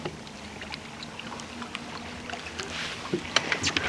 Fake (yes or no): no